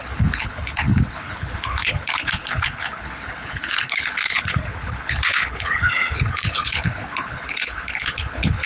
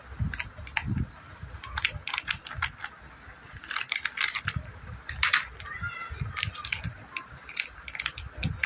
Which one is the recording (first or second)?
second